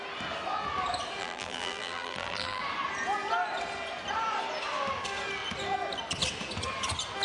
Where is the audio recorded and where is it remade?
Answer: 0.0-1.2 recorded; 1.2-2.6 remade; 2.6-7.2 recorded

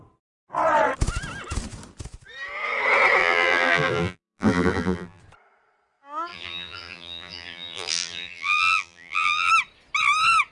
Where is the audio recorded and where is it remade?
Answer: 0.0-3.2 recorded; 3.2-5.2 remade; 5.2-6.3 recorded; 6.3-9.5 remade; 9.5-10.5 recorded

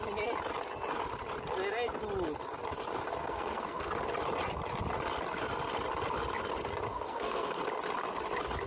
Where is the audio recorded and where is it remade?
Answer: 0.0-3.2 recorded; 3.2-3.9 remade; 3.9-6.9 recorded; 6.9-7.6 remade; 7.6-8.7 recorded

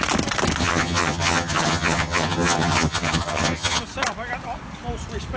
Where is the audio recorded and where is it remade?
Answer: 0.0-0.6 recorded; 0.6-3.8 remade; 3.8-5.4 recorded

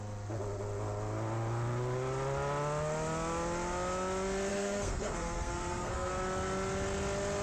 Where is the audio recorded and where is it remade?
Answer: 0.0-4.5 recorded; 4.5-6.1 remade; 6.1-7.4 recorded

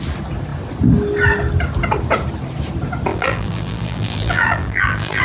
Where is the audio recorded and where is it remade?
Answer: 0.0-3.1 recorded; 3.1-5.2 remade

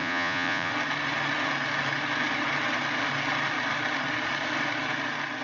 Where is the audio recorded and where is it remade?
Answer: 0.0-0.7 remade; 0.7-5.4 recorded